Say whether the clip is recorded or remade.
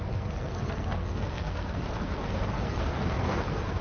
remade